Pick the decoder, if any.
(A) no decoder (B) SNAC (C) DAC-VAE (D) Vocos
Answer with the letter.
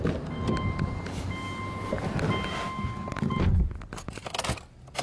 A